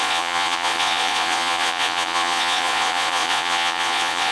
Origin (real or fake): fake